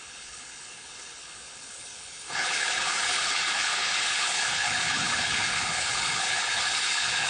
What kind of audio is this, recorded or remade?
remade